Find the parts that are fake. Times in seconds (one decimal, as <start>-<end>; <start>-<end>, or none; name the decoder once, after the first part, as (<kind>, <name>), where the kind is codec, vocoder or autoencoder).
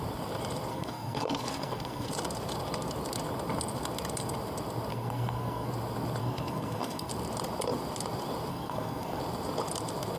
0.7-2.1 (codec, SNAC); 4.9-5.7; 6.2-7.1; 8.5-9.2